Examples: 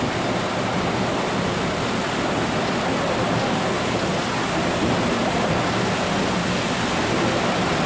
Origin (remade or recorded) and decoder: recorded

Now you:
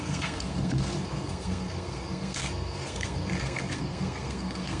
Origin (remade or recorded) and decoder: remade, codec, SNAC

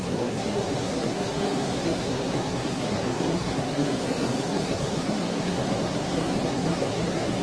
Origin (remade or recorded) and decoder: remade, codec, SNAC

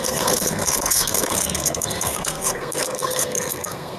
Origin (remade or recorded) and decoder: remade, codec, SNAC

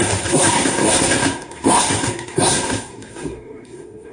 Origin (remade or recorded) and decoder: remade, codec, SNAC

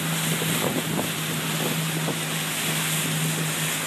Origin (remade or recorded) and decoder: recorded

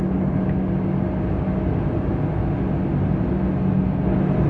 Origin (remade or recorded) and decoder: recorded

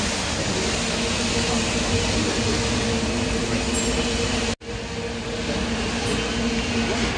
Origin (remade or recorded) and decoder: recorded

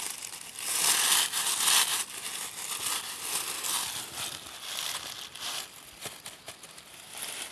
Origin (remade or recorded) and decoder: recorded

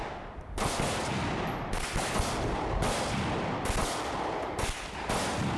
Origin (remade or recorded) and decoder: recorded